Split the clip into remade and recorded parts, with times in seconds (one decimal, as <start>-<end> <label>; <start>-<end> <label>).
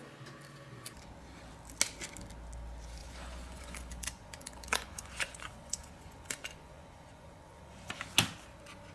0.0-3.0 recorded; 3.0-7.9 remade; 7.9-8.9 recorded